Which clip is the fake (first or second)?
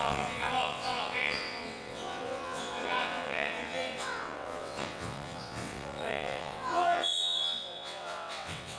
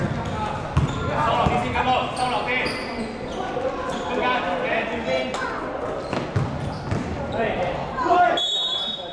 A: first